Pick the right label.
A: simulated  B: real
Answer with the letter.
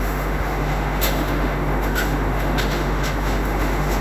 A